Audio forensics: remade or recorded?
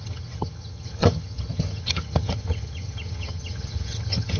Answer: remade